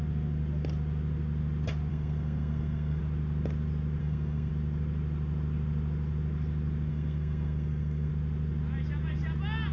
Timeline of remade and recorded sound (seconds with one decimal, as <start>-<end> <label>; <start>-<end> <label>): 0.0-1.9 recorded; 1.9-3.0 remade; 3.0-4.0 recorded; 4.0-4.5 remade; 4.5-6.9 recorded; 6.9-8.1 remade; 8.1-9.7 recorded